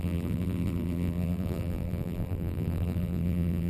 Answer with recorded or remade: remade